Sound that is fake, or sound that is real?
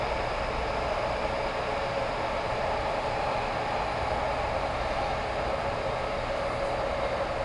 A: real